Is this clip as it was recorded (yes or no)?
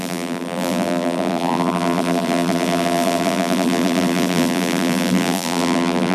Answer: no